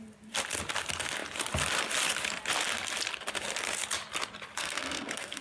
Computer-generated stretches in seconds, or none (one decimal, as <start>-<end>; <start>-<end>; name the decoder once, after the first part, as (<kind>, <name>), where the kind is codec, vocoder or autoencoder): 4.6-5.4 (codec, SNAC)